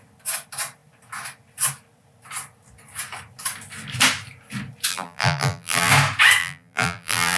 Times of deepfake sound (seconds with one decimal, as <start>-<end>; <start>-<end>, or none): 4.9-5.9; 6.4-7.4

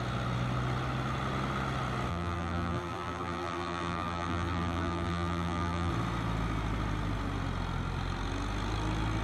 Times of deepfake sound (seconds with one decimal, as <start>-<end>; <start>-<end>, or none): 2.1-5.9

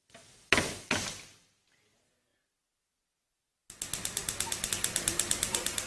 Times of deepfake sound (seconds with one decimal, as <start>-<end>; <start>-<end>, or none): none

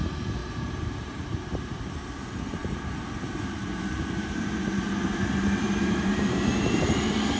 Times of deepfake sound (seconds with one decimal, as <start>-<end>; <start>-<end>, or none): 0.4-1.9; 2.6-7.0

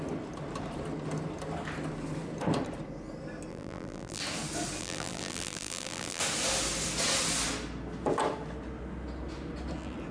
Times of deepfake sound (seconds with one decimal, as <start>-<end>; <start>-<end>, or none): 3.5-4.2; 4.8-6.2